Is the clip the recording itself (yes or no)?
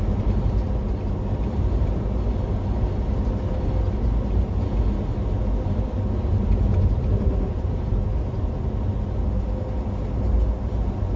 yes